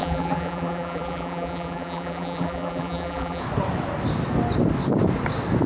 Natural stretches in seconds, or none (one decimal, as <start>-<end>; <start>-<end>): 3.4-5.7